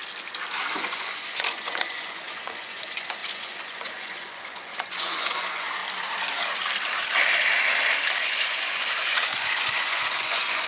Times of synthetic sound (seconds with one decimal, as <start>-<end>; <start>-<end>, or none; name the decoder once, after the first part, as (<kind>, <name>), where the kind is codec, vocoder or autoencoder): 0.7-5.8 (vocoder, Vocos); 8.2-10.7

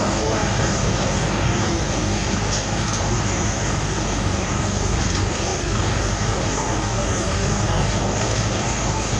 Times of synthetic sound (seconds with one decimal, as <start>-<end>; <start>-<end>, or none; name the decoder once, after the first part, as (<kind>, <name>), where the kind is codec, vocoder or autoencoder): 0.0-9.2 (codec, DAC)

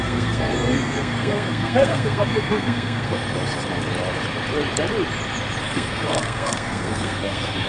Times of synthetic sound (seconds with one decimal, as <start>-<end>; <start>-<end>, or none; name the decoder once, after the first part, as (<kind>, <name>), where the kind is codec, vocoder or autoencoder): 0.0-3.2 (codec, SNAC); 5.6-7.7

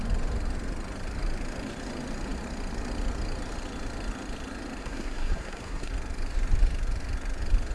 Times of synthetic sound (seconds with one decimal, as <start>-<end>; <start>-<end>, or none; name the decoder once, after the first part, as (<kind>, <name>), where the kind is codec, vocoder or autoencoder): 4.8-5.9 (codec, SNAC)

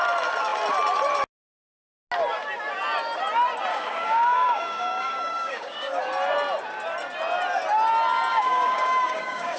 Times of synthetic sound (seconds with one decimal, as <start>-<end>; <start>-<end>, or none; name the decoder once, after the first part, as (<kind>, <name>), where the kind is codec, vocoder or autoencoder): 3.7-6.0 (codec, DAC); 8.3-9.6

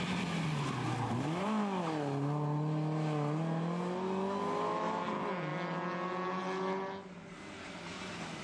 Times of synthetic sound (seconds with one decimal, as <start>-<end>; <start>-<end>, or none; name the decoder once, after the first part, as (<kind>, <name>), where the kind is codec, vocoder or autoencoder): none